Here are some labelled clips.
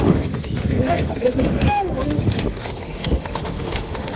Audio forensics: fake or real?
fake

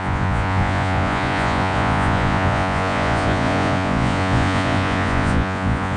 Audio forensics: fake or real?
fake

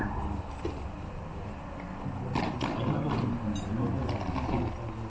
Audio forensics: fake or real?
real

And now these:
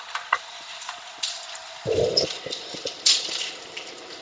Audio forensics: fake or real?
real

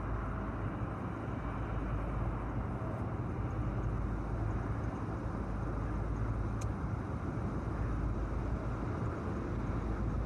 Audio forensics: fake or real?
real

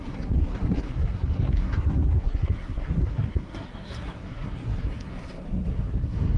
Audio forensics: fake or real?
fake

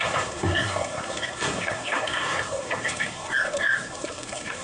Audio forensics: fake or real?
fake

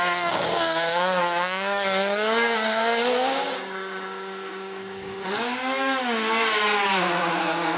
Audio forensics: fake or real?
fake